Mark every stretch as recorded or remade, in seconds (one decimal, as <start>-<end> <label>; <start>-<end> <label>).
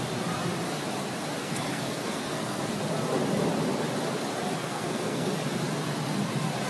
0.0-1.4 recorded; 1.4-2.7 remade; 2.7-4.6 recorded; 4.6-5.3 remade; 5.3-6.7 recorded